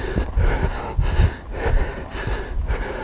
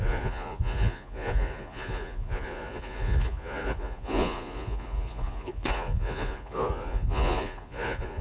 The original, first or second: first